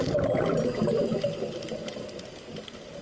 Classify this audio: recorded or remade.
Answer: recorded